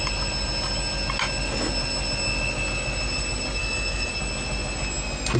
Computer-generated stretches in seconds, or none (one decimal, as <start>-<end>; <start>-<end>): 3.6-4.1